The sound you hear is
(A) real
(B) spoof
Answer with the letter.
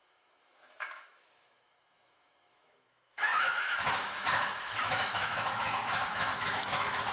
B